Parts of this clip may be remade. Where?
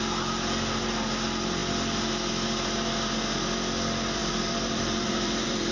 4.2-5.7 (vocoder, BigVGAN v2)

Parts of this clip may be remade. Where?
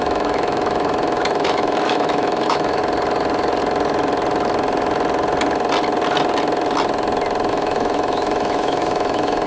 0.0-2.8 (autoencoder, DAC-VAE); 7.5-9.5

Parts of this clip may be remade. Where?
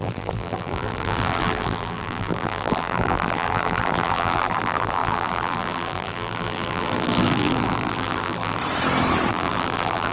0.0-8.6 (vocoder, BigVGAN v2); 9.3-10.1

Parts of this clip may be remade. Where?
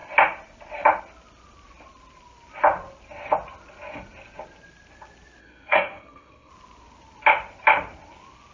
5.4-6.5 (codec, SNAC)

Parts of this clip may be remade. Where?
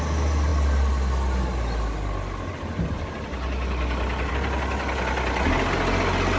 none